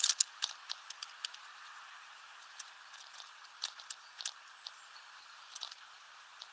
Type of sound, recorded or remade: recorded